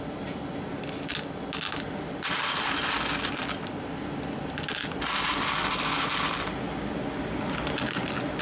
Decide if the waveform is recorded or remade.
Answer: recorded